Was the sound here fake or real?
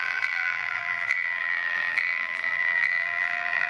fake